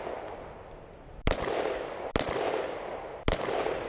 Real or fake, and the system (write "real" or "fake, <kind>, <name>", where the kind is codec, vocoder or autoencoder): real